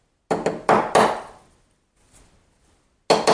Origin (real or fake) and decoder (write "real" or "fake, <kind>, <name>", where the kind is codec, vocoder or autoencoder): real